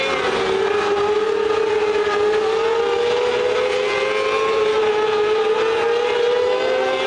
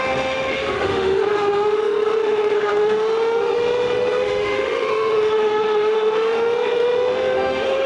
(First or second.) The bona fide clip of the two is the first